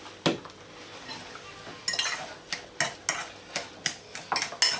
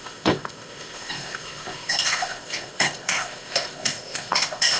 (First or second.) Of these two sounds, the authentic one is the first